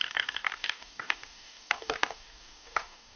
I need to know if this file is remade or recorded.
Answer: remade